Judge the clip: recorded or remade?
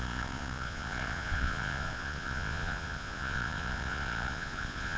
remade